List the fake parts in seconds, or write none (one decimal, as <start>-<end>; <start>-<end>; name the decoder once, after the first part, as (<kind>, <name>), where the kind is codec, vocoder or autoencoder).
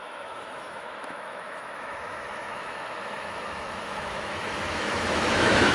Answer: 0.0-5.7 (autoencoder, DAC-VAE)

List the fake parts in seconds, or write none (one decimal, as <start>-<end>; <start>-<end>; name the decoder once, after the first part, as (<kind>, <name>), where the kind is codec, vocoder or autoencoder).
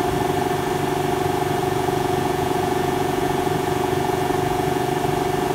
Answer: 1.6-4.9 (vocoder, Vocos)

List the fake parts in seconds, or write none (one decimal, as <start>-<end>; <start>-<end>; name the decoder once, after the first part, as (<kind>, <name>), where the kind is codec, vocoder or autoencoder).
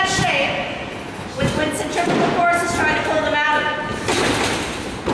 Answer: none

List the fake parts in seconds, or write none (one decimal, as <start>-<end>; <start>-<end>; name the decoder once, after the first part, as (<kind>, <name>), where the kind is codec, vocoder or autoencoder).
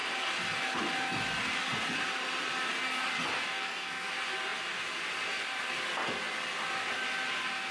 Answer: 3.5-4.1 (codec, SNAC)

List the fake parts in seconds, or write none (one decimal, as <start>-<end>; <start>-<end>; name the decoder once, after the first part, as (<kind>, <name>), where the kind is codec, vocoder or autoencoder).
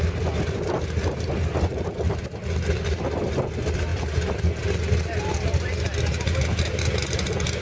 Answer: none